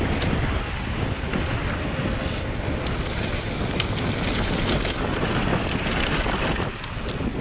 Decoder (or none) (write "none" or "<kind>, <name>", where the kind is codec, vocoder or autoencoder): none